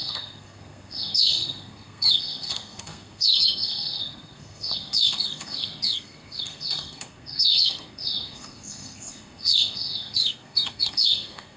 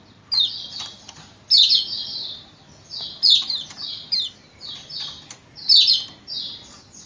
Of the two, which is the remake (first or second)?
first